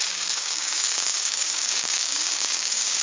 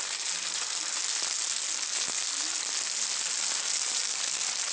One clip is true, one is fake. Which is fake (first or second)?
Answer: first